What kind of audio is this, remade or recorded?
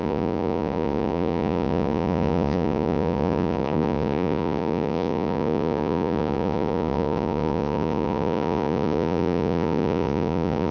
remade